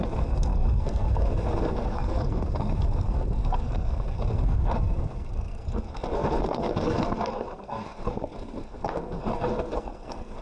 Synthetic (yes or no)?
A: yes